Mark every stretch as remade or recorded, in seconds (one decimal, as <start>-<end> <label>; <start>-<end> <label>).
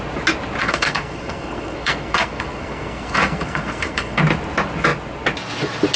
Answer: 0.0-0.6 recorded; 0.6-4.2 remade; 4.2-6.0 recorded